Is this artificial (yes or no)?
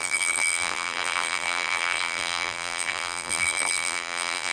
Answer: yes